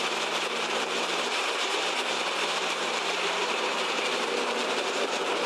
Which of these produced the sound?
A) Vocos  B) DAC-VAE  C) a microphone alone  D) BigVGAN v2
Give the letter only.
D